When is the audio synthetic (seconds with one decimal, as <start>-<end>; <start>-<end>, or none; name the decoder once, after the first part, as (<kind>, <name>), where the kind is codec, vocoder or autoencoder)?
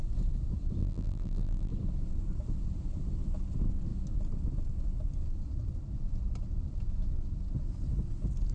0.8-1.7 (vocoder, BigVGAN v2)